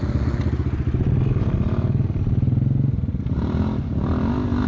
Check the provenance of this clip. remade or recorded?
recorded